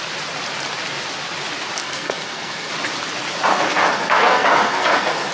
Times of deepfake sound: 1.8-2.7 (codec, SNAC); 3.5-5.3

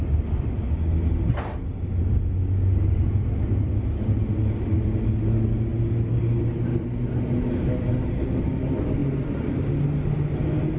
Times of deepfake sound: 9.0-9.7 (vocoder, BigVGAN v2)

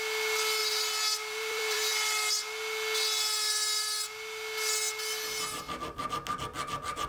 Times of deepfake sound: 0.6-1.9 (vocoder, BigVGAN v2)

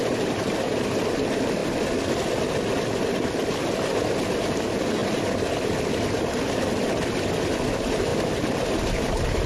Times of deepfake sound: none

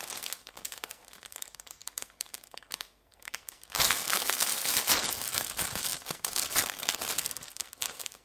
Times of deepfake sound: 0.0-8.2 (codec, SNAC)

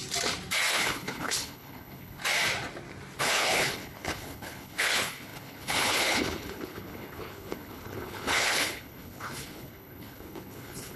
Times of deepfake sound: 0.7-2.2 (codec, HILCodec); 3.2-11.0

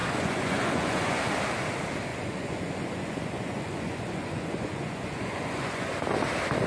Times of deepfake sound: 0.0-1.2 (vocoder, Vocos); 2.1-5.9

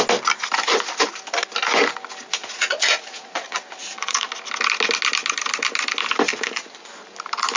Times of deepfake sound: 2.4-4.3 (vocoder, Vocos); 6.3-6.9